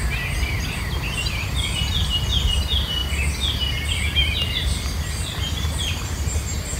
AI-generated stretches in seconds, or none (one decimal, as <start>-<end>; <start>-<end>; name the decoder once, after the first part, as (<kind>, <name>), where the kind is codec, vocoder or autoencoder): none